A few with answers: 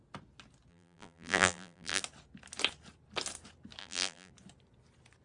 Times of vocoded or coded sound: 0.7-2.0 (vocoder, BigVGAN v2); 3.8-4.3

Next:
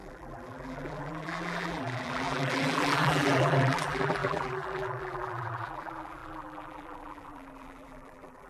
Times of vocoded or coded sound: 0.0-8.5 (vocoder, BigVGAN v2)

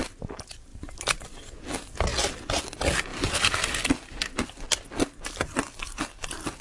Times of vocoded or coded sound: 0.7-1.6 (vocoder, BigVGAN v2)